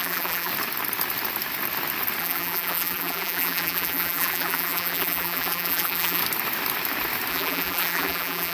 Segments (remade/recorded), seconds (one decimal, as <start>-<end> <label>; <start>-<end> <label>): 0.0-0.5 remade; 0.5-2.2 recorded; 2.2-6.2 remade; 6.2-7.3 recorded; 7.3-8.5 remade